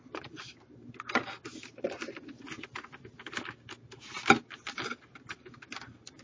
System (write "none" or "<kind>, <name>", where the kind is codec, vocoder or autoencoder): none